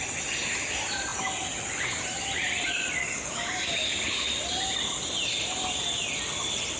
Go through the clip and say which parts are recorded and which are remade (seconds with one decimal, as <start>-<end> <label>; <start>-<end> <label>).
0.0-3.0 recorded; 3.0-3.7 remade; 3.7-6.8 recorded